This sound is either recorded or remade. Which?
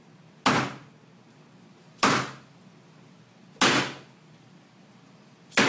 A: recorded